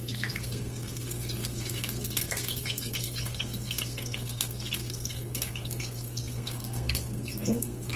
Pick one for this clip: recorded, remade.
remade